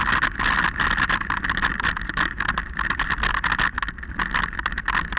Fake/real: real